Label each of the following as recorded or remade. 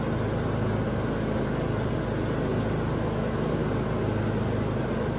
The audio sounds recorded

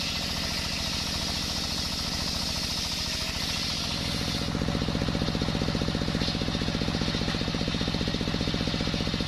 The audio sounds recorded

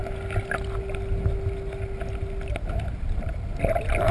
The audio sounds recorded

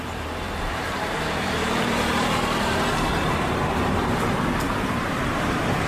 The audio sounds remade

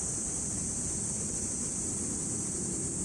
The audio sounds remade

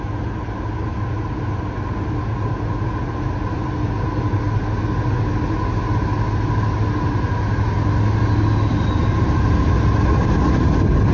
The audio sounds recorded